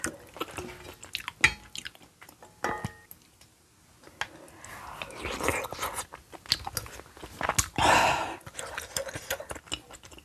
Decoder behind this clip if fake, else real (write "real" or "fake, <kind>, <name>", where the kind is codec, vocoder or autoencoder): real